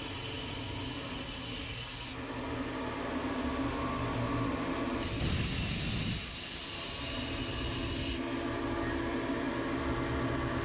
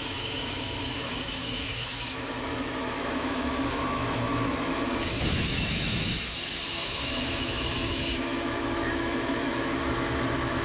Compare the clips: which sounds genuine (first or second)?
first